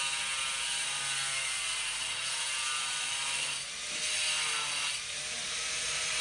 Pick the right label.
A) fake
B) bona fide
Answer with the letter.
B